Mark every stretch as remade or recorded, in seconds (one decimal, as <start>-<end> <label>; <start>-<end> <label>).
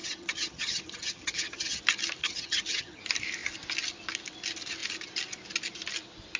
0.0-1.8 remade; 1.8-2.2 recorded; 2.2-3.0 remade; 3.0-6.4 recorded